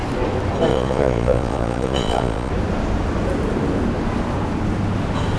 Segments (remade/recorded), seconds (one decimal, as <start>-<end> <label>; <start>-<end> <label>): 0.0-0.7 recorded; 0.7-2.5 remade; 2.5-5.4 recorded